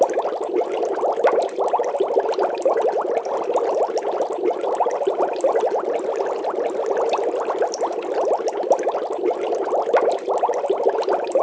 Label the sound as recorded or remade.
recorded